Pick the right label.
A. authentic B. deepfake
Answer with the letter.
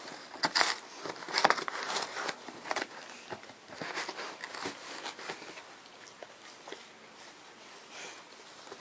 A